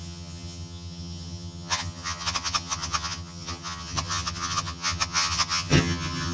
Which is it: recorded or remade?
remade